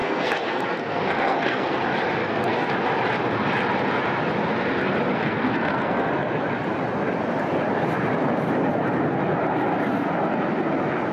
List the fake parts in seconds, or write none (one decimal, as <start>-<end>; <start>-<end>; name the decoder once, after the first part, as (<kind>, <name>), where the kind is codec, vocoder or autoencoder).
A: 0.0-1.8 (codec, SNAC); 2.2-2.7; 5.1-6.1